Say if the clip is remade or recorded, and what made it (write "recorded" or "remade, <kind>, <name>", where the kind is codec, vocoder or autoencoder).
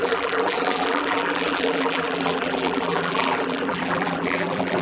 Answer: remade, vocoder, BigVGAN v2